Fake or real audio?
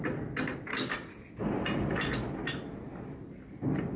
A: real